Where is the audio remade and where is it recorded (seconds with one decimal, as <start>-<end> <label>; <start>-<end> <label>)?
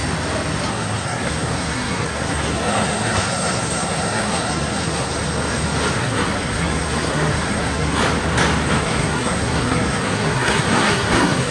0.0-0.7 recorded; 0.7-5.1 remade; 5.1-6.0 recorded; 6.0-8.0 remade; 8.0-8.8 recorded; 8.8-11.5 remade